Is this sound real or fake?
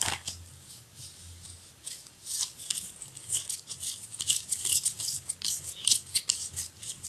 fake